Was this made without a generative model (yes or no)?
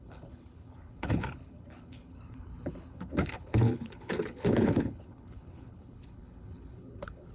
no